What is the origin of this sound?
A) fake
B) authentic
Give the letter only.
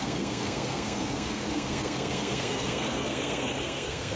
A